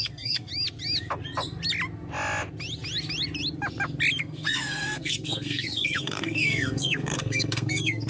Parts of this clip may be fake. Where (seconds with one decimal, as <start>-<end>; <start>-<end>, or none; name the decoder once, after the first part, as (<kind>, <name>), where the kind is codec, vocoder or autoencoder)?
0.0-0.5 (codec, SNAC); 4.2-8.1